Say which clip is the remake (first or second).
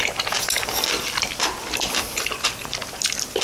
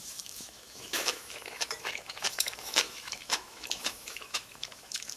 second